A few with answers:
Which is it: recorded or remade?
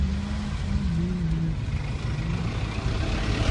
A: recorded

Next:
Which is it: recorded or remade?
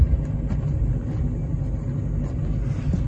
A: recorded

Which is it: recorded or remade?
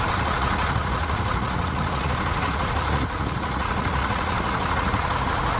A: remade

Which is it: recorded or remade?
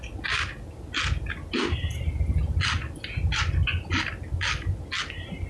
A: recorded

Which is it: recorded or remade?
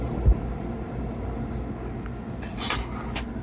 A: recorded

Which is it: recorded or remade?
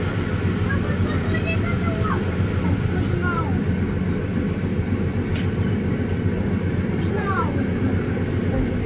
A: recorded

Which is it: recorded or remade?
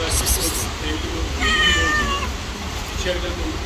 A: recorded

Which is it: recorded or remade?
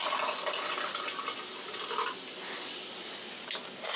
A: recorded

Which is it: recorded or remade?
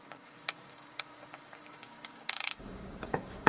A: remade